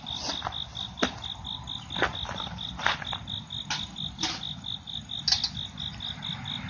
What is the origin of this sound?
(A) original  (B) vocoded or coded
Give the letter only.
A